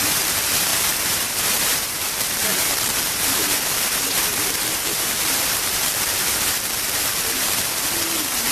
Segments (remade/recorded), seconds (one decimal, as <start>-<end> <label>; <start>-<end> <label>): 0.0-8.5 remade